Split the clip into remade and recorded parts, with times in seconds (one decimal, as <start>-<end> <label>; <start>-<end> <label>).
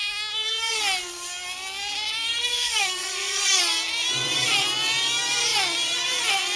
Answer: 0.0-0.7 remade; 0.7-2.5 recorded; 2.5-3.6 remade; 3.6-6.6 recorded